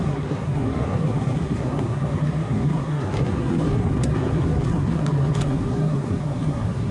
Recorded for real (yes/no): no